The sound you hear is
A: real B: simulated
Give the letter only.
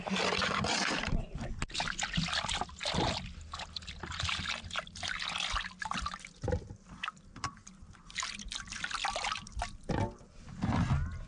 A